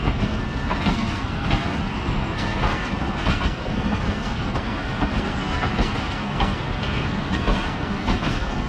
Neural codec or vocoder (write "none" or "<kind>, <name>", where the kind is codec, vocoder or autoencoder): codec, SNAC